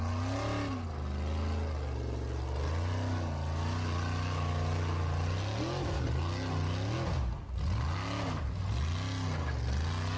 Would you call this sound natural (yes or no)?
yes